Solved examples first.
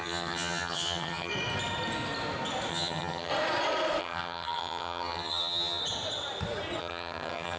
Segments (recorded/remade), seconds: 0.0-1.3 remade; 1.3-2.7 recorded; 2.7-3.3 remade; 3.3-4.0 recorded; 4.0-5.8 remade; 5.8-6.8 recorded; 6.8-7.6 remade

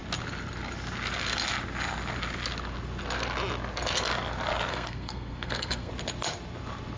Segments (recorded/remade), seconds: 0.0-4.7 recorded; 4.7-5.9 remade; 5.9-7.0 recorded

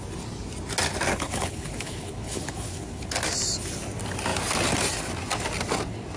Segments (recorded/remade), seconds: 0.0-1.1 recorded; 1.1-3.1 remade; 3.1-6.2 recorded